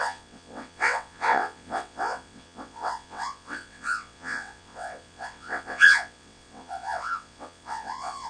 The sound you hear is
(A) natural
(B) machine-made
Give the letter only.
B